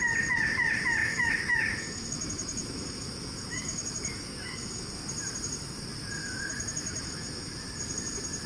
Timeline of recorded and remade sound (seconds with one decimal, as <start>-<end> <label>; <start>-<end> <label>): 0.0-1.0 recorded; 1.0-4.9 remade; 4.9-6.2 recorded; 6.2-7.6 remade; 7.6-8.5 recorded